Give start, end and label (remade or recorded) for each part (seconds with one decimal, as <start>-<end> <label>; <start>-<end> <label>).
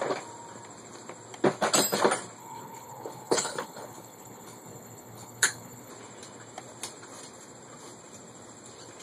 0.0-2.4 recorded; 2.4-5.9 remade; 5.9-9.0 recorded